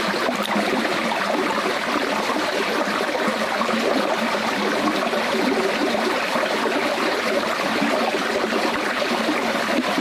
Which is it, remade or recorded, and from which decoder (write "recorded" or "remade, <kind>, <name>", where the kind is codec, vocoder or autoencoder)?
recorded